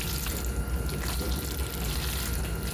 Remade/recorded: recorded